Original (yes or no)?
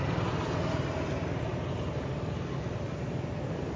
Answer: yes